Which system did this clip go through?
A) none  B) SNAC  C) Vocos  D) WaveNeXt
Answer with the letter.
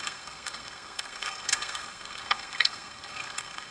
B